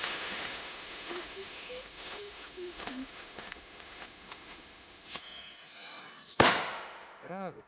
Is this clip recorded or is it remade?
remade